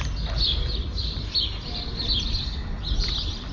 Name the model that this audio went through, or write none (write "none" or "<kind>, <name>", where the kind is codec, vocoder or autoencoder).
none